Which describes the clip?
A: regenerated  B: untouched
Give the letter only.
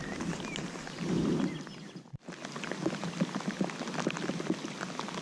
B